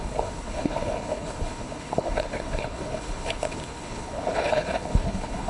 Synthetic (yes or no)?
yes